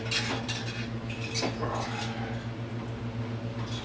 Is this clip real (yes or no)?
yes